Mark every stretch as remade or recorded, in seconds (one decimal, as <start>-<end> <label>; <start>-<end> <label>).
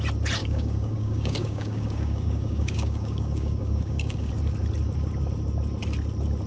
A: 0.0-0.4 recorded; 0.4-4.3 remade; 4.3-6.5 recorded